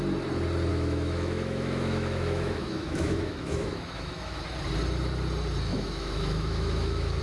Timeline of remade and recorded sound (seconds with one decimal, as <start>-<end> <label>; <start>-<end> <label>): 0.0-0.7 recorded; 0.7-4.4 remade; 4.4-5.7 recorded; 5.7-7.2 remade